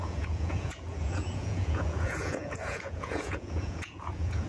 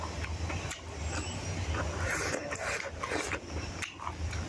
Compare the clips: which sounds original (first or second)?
second